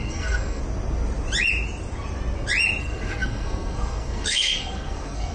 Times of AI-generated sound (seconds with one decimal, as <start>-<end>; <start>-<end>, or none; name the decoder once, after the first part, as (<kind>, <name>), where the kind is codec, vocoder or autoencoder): 0.0-0.6 (codec, SNAC); 2.8-5.3